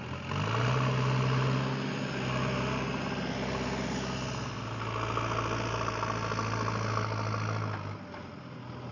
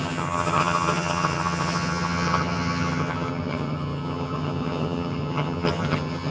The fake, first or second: second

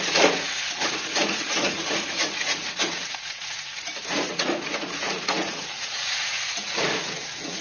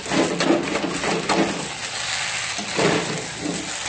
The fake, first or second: first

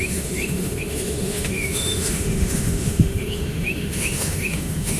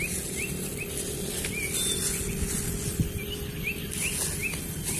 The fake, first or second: first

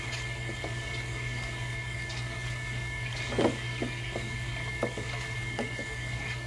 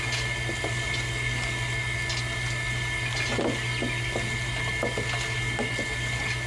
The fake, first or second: first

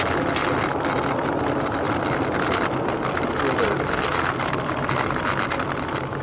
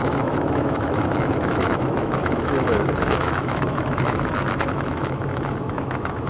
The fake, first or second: second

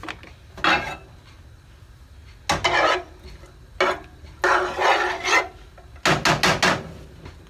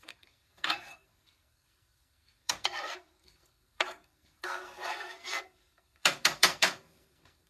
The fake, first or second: second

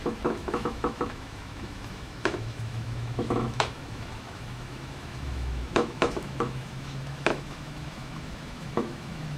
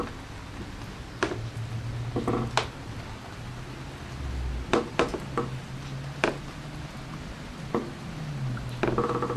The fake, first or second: first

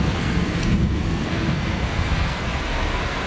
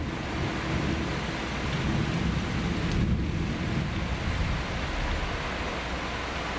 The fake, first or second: first